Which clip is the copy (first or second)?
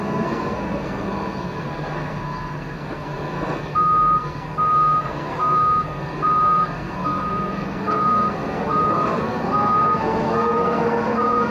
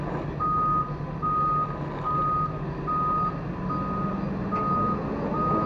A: first